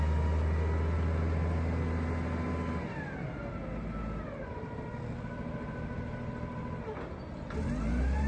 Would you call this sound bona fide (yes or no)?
yes